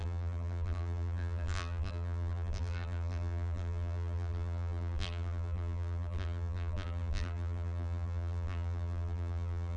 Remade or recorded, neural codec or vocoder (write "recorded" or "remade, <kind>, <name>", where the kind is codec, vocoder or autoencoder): remade, vocoder, BigVGAN v2